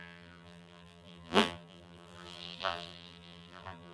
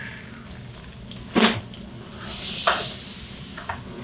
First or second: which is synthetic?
first